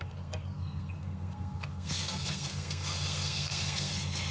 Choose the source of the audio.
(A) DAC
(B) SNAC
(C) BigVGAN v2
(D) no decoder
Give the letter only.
B